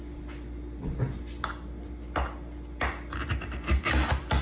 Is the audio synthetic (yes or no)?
no